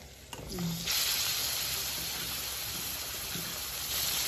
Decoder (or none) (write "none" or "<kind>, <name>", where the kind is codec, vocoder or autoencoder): none